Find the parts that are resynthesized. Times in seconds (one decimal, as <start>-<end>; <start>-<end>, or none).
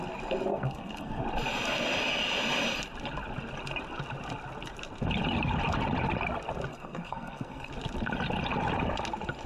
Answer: 0.5-1.2; 6.7-7.7